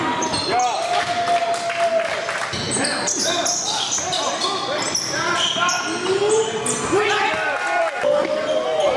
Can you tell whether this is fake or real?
real